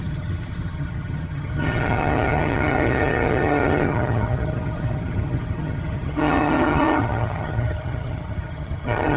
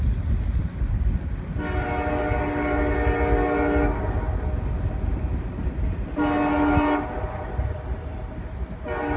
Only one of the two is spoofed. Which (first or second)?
first